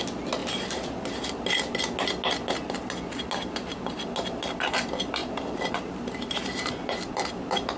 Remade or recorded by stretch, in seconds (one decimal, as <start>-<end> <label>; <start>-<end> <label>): 0.0-5.2 recorded; 5.2-7.1 remade; 7.1-7.8 recorded